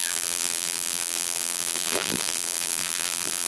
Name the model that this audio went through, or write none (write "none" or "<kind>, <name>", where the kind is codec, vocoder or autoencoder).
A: vocoder, BigVGAN v2